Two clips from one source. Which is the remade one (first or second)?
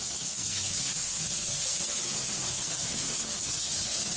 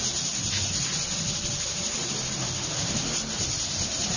first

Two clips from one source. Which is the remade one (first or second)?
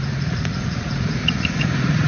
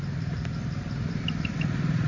first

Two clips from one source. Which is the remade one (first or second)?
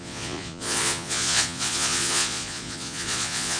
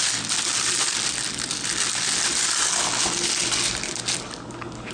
first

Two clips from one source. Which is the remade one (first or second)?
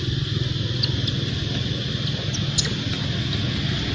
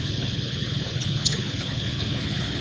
second